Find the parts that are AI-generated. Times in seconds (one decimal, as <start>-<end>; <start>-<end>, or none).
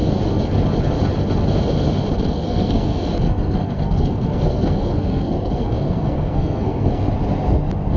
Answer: 2.3-7.1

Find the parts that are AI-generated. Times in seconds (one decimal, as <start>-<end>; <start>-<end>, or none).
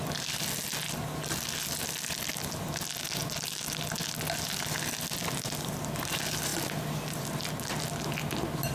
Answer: none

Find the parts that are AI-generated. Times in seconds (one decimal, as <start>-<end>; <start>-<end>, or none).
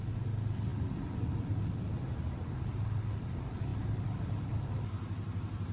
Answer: none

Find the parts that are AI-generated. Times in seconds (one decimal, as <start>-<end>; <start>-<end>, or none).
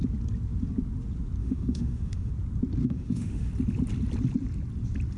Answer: 1.4-2.3; 2.8-3.5